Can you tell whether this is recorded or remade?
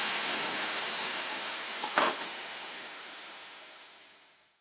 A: remade